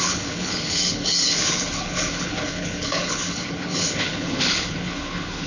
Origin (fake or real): fake